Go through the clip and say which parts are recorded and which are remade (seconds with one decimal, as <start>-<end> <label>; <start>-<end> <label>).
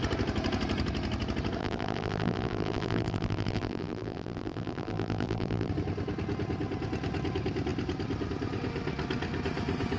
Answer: 0.0-1.6 recorded; 1.6-5.7 remade; 5.7-10.0 recorded